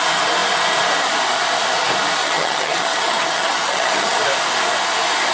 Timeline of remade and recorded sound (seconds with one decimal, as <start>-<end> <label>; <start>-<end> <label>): 0.0-2.2 recorded; 2.2-4.2 remade; 4.2-5.3 recorded